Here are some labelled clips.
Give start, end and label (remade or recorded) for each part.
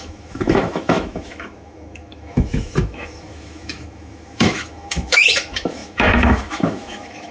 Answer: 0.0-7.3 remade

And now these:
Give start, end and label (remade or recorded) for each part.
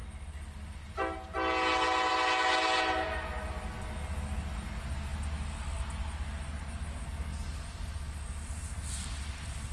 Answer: 0.0-9.7 recorded